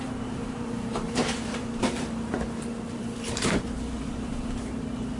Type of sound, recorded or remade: remade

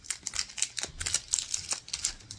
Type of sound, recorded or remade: recorded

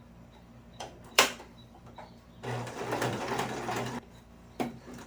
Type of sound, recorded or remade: remade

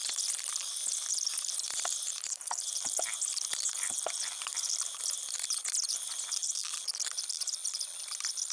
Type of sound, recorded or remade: remade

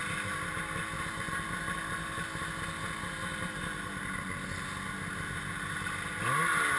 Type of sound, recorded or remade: recorded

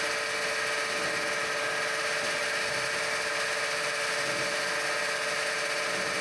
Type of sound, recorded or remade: recorded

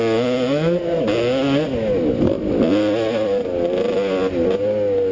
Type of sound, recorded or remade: recorded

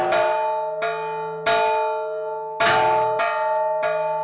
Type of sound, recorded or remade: recorded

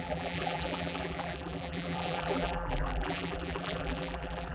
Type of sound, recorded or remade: remade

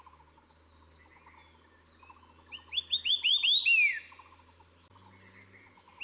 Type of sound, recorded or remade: recorded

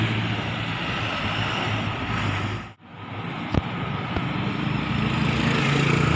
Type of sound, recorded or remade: recorded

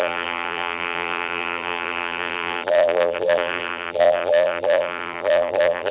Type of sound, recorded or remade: remade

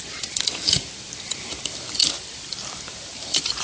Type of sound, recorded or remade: remade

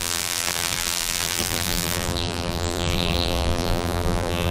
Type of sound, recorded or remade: remade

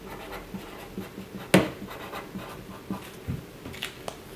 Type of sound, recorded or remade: recorded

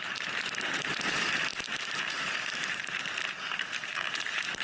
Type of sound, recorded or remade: remade